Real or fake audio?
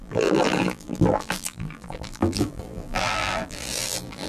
fake